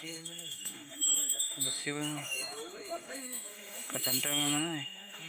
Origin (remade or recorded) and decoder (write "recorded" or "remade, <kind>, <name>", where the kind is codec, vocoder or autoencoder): remade, autoencoder, DAC-VAE